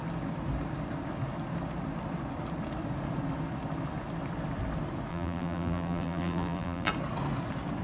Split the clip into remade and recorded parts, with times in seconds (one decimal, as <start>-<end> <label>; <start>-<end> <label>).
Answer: 0.0-5.1 recorded; 5.1-6.9 remade; 6.9-7.8 recorded

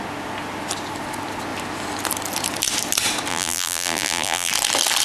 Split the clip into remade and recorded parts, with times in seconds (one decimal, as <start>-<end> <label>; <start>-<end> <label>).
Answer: 0.0-3.3 recorded; 3.3-4.5 remade; 4.5-5.0 recorded

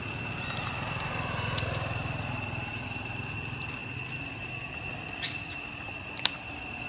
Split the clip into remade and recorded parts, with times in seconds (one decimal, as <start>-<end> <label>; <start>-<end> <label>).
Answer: 0.0-6.9 recorded

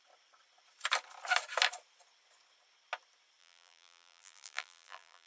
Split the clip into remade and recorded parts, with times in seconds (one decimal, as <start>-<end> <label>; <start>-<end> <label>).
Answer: 0.0-3.4 recorded; 3.4-5.3 remade

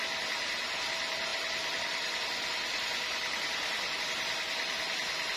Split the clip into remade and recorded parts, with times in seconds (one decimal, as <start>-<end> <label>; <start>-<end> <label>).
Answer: 0.0-1.3 recorded; 1.3-4.0 remade; 4.0-5.4 recorded

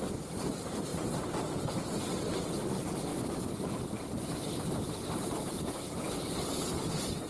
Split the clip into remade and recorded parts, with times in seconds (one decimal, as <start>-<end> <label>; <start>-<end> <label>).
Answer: 0.0-0.9 recorded; 0.9-2.6 remade; 2.6-3.1 recorded; 3.1-6.4 remade; 6.4-7.3 recorded

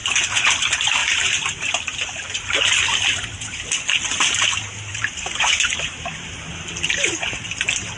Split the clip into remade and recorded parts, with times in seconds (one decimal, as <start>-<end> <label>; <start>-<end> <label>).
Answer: 0.0-1.0 recorded; 1.0-2.6 remade; 2.6-4.9 recorded; 4.9-6.5 remade; 6.5-8.0 recorded